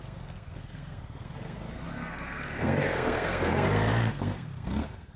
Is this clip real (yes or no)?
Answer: no